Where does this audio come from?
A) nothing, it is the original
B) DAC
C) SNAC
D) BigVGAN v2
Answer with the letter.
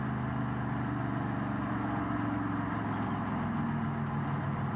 A